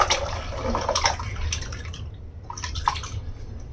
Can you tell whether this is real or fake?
real